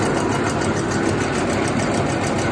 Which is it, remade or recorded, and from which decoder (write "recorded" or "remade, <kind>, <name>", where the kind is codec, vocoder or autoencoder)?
recorded